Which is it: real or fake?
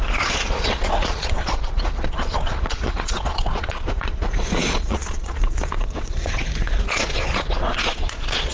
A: fake